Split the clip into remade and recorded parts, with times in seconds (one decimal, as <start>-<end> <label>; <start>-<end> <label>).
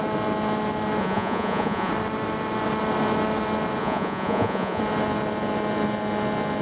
0.0-1.0 recorded; 1.0-1.9 remade; 1.9-3.8 recorded; 3.8-4.8 remade; 4.8-6.6 recorded